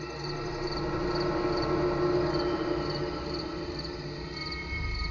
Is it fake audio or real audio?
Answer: real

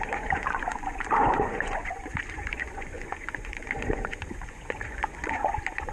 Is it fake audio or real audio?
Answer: fake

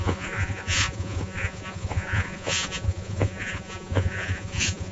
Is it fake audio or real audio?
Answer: fake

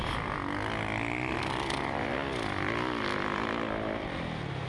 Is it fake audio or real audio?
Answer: real